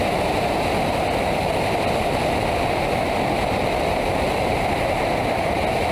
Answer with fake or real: real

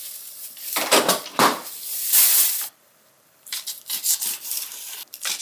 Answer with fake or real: fake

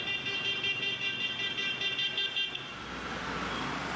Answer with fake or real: real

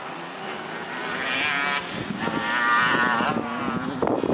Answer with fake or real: real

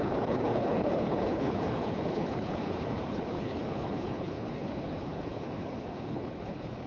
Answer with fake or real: fake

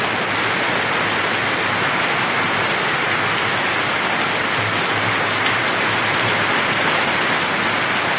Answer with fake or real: real